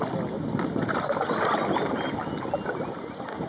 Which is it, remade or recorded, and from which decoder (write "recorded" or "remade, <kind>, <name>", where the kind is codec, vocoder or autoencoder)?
recorded